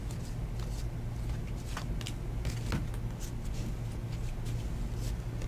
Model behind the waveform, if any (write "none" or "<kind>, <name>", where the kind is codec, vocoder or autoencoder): none